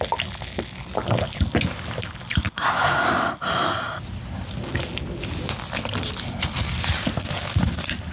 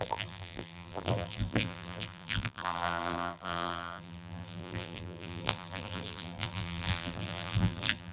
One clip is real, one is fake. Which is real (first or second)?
first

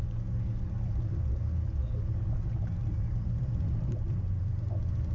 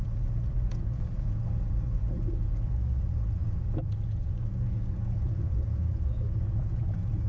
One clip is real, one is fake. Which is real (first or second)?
first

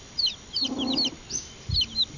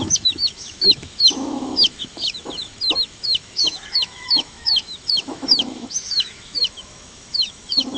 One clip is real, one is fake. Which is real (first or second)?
first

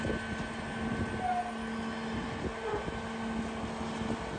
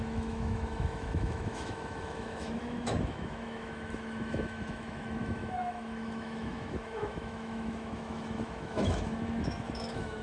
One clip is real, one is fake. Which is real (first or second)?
first